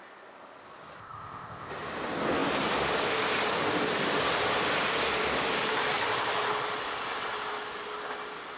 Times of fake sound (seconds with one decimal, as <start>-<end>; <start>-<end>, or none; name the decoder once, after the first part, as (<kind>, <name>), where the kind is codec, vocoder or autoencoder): 1.0-1.7 (codec, ZipCodec)